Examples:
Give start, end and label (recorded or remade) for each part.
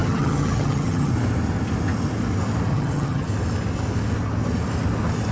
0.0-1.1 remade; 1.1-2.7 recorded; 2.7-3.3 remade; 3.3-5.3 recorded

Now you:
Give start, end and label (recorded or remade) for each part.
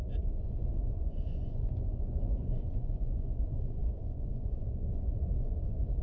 0.0-6.0 remade